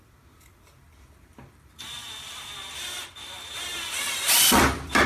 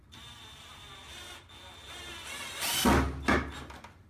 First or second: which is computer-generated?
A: first